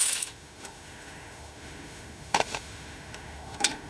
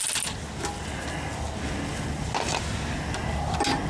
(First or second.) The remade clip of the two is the first